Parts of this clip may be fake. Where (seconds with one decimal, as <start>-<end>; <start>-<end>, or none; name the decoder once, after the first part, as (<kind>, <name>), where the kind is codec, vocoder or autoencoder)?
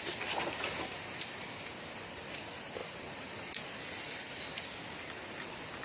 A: 2.8-3.5 (vocoder, BigVGAN v2)